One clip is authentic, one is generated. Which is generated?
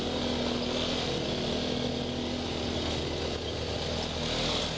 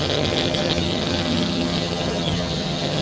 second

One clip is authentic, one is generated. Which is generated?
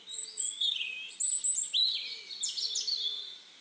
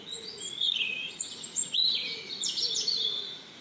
second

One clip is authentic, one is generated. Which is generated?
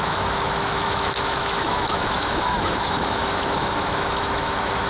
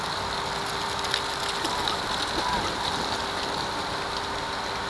first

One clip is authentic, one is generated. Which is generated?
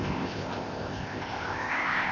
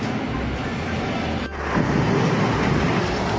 first